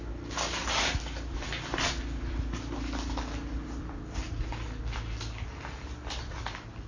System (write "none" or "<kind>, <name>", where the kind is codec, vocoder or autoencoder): none